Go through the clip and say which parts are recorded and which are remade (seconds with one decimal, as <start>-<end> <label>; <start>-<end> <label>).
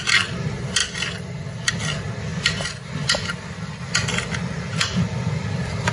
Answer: 0.0-0.8 recorded; 0.8-1.7 remade; 1.7-2.3 recorded; 2.3-5.9 remade